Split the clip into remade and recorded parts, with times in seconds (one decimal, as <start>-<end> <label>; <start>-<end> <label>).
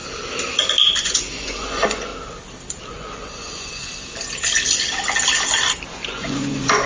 0.0-1.0 recorded; 1.0-2.1 remade; 2.1-2.9 recorded; 2.9-3.9 remade; 3.9-5.9 recorded; 5.9-6.9 remade